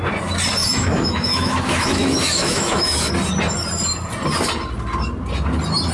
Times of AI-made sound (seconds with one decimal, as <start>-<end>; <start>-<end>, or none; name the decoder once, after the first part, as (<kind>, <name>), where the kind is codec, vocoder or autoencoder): 0.6-3.1 (autoencoder, DAC-VAE)